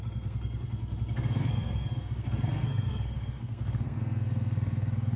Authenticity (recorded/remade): remade